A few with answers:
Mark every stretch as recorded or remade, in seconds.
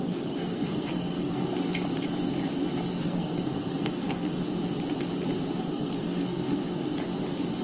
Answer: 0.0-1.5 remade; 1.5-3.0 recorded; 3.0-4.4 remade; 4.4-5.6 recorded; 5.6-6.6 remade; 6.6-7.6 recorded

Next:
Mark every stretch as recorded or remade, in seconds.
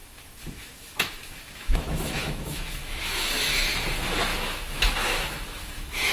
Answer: 0.0-3.7 remade; 3.7-4.3 recorded; 4.3-6.1 remade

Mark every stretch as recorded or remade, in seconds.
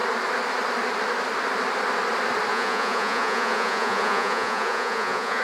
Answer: 0.0-2.5 recorded; 2.5-5.4 remade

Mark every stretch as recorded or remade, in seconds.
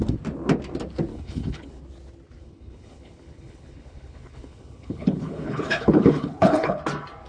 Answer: 0.0-1.1 recorded; 1.1-1.8 remade; 1.8-2.4 recorded; 2.4-6.8 remade; 6.8-7.3 recorded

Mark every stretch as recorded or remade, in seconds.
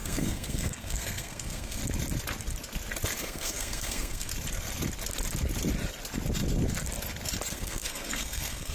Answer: 0.0-1.8 remade; 1.8-3.2 recorded; 3.2-4.3 remade; 4.3-7.5 recorded; 7.5-8.7 remade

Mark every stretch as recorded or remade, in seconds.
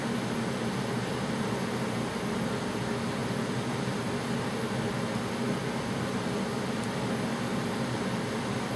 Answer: 0.0-8.8 recorded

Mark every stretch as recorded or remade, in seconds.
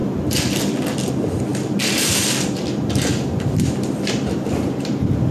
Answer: 0.0-5.3 recorded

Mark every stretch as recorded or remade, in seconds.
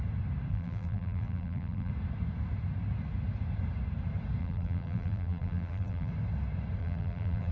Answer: 0.0-0.5 recorded; 0.5-1.9 remade; 1.9-4.4 recorded; 4.4-6.1 remade; 6.1-6.8 recorded; 6.8-7.5 remade